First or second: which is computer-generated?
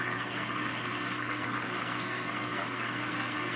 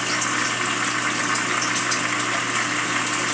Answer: first